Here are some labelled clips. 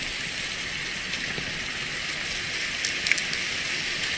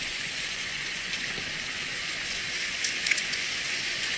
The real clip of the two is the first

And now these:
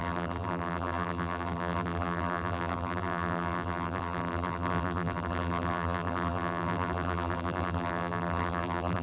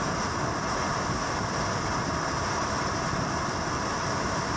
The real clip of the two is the second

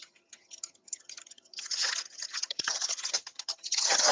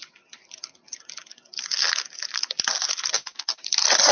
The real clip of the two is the second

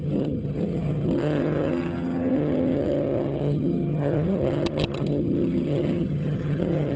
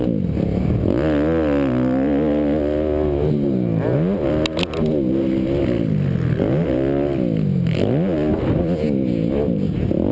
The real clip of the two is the second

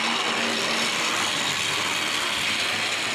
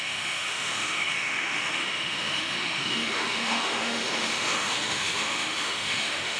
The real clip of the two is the first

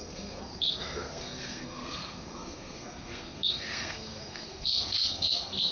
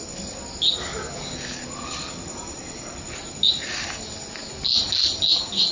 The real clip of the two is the second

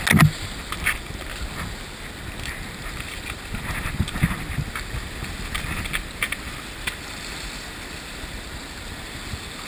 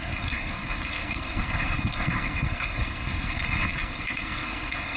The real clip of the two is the first